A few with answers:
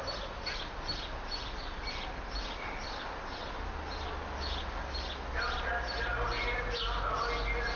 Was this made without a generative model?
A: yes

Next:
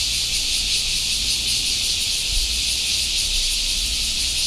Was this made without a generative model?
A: no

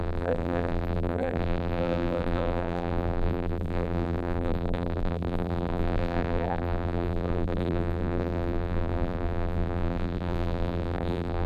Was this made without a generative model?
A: no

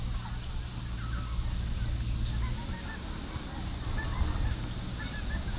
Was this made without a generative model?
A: yes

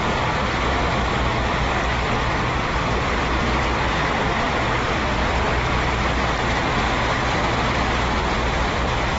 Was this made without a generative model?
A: yes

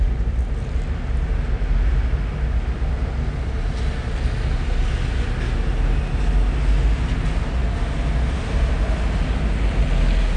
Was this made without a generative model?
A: yes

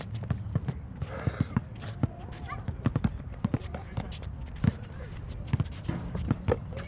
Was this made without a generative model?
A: no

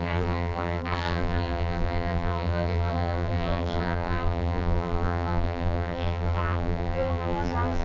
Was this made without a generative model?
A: no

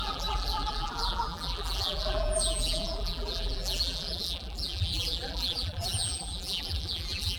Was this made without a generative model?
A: no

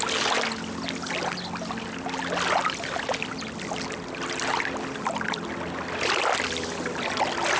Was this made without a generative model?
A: yes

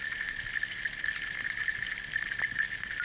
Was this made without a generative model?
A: yes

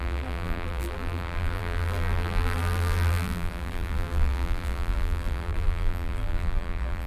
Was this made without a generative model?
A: no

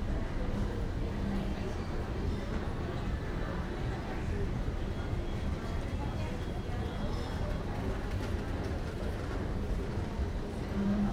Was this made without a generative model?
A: yes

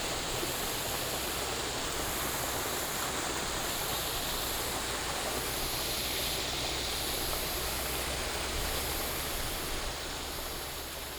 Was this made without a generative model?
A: yes